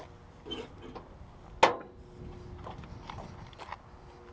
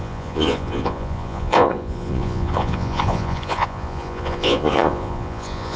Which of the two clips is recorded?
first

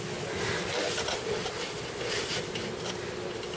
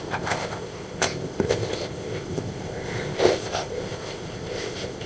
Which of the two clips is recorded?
first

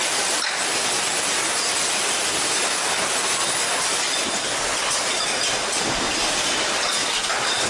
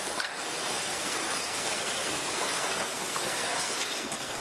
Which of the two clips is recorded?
first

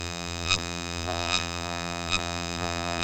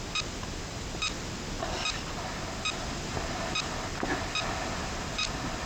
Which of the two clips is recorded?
second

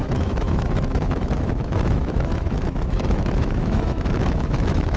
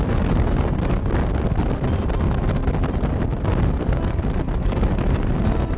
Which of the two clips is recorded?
second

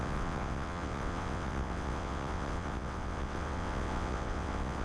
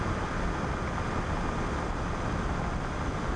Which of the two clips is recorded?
second